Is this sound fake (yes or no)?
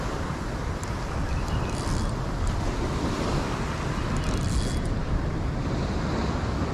no